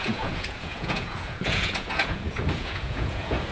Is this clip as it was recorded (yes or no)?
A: no